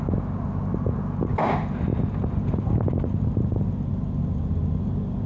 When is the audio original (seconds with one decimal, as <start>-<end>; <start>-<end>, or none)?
0.0-5.3